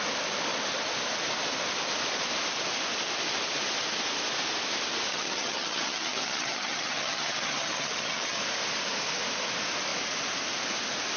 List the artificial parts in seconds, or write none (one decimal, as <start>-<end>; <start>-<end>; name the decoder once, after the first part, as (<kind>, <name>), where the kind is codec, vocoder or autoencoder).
5.1-8.4 (vocoder, HiFi-GAN)